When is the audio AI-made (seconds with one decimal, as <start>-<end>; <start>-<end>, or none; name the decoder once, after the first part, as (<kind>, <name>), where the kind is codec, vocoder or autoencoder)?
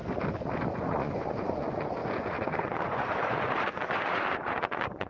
0.7-5.1 (vocoder, Vocos)